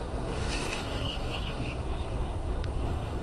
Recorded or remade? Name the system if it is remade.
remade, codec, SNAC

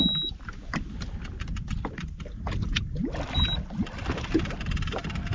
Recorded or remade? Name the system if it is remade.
recorded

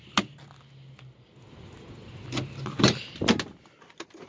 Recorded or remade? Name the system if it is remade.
recorded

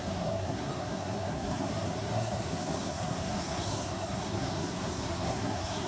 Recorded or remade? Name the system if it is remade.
remade, codec, SNAC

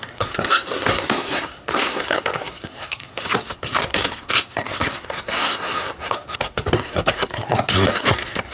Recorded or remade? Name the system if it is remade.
remade, codec, SNAC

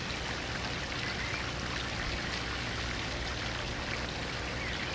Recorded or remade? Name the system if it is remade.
recorded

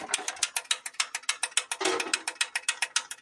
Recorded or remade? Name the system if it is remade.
recorded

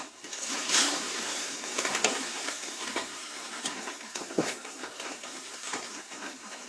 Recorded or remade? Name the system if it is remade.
remade, codec, SNAC